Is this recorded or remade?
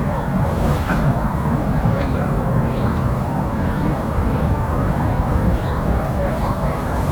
remade